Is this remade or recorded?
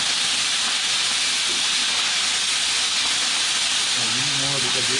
recorded